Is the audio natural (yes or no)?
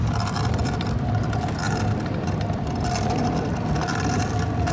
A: no